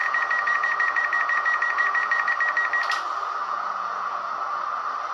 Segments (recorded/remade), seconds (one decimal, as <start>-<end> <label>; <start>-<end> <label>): 0.0-2.3 remade; 2.3-3.4 recorded; 3.4-4.3 remade; 4.3-5.1 recorded